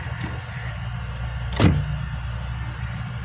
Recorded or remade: recorded